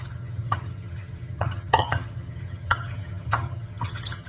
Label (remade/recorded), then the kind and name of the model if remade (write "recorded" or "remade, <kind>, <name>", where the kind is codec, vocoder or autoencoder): remade, vocoder, HiFi-GAN